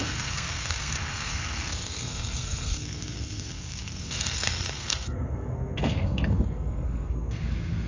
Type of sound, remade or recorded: remade